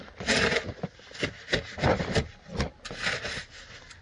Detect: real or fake real